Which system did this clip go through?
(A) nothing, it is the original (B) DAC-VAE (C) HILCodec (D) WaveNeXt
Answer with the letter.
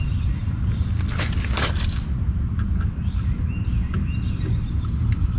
A